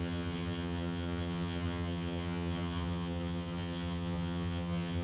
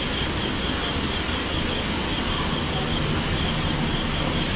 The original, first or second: second